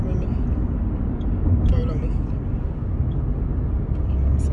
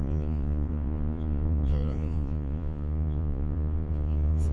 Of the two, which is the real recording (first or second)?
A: first